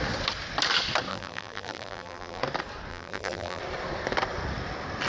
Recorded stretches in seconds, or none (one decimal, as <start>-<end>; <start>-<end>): 0.0-1.1; 2.4-2.9; 3.6-5.1